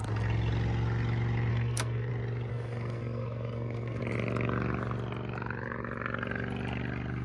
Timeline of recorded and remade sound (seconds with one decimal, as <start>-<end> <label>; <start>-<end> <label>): 0.0-1.5 recorded; 1.5-2.1 remade; 2.1-2.5 recorded; 2.5-4.0 remade; 4.0-7.2 recorded